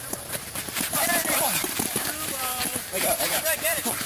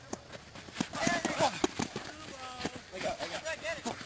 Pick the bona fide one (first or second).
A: second